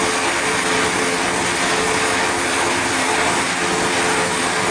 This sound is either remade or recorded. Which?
recorded